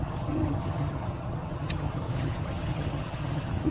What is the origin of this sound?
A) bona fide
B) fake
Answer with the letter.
B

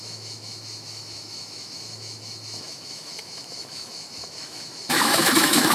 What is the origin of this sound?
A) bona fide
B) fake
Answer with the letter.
B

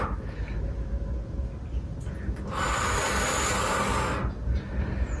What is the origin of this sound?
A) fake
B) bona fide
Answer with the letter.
B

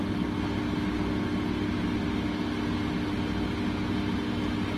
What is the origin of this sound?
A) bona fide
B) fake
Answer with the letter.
A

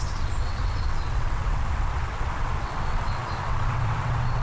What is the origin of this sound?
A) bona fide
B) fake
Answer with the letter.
B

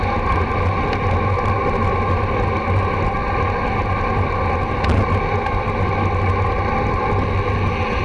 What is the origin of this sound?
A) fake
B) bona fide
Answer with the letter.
B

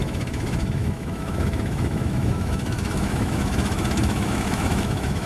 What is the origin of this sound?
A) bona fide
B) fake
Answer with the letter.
B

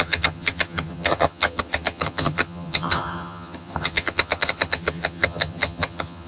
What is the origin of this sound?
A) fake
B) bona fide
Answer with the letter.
A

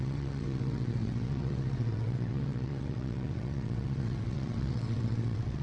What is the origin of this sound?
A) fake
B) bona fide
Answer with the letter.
A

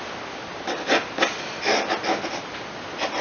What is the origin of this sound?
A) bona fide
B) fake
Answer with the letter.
A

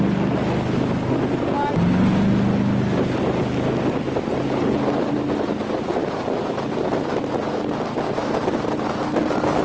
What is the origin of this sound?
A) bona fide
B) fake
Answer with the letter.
A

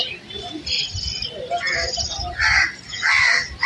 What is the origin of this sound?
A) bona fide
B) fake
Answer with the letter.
A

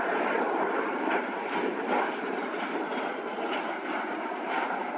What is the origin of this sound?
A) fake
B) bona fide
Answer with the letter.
A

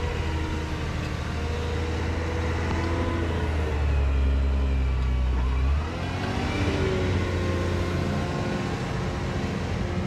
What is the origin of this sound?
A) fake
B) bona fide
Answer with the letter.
B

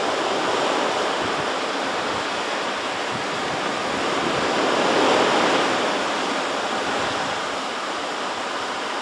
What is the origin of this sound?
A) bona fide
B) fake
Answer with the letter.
A